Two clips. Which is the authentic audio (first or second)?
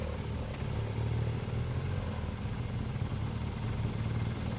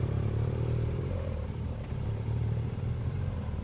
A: first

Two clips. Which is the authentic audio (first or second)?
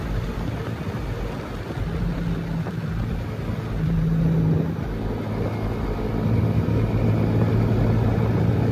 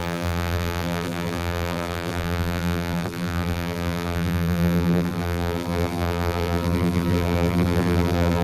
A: first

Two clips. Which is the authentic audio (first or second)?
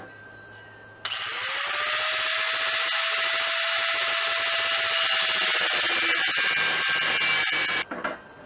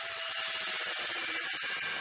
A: first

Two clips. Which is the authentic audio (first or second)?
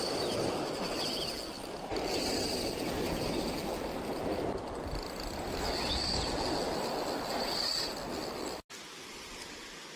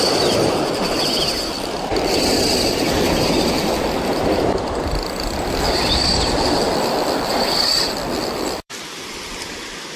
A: first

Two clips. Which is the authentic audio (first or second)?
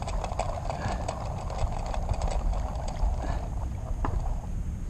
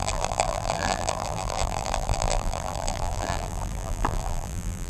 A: first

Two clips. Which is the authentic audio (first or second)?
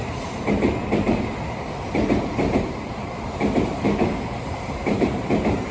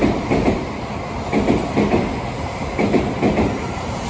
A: second